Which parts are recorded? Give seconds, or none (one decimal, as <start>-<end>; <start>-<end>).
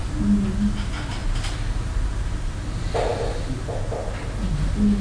0.0-5.0